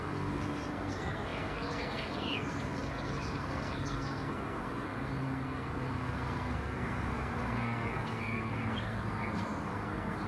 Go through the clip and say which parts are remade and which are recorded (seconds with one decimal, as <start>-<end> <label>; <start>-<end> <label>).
0.0-10.3 remade